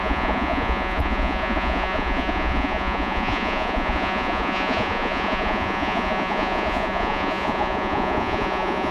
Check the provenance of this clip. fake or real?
fake